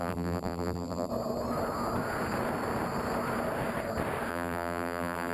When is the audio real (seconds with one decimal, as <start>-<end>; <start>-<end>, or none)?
1.1-4.3